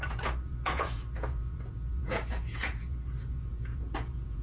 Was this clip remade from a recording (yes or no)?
yes